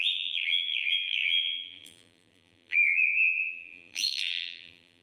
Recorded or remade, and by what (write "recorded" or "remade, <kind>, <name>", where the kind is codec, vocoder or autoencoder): remade, vocoder, BigVGAN v2